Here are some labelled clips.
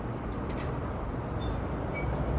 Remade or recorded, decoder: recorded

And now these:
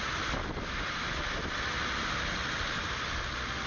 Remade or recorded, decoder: recorded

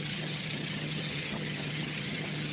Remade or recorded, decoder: remade, vocoder, HiFi-GAN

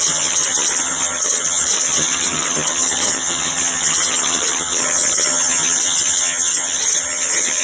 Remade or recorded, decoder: remade, vocoder, HiFi-GAN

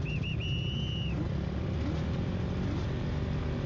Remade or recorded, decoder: recorded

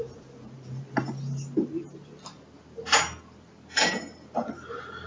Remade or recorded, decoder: recorded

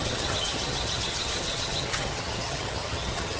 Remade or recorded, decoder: remade, vocoder, HiFi-GAN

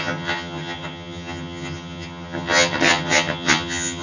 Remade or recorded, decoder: remade, vocoder, HiFi-GAN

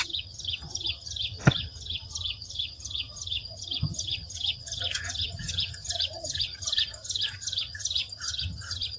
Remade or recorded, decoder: remade, vocoder, HiFi-GAN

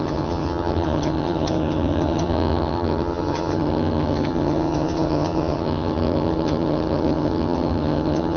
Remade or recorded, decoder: remade, vocoder, HiFi-GAN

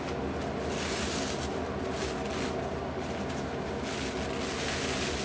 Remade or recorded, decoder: recorded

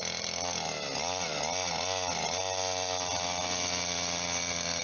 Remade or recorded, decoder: recorded